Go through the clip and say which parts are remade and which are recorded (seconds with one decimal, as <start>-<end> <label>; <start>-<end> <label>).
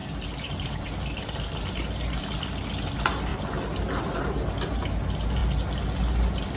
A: 0.0-6.6 recorded